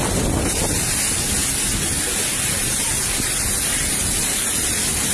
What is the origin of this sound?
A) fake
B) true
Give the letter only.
B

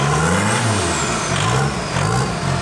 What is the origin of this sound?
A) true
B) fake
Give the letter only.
A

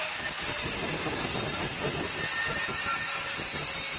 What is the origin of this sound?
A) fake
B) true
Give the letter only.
B